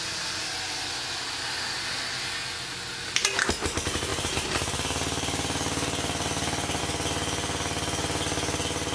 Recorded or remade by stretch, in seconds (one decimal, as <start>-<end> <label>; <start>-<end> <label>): 0.0-4.1 recorded; 4.1-6.8 remade; 6.8-8.9 recorded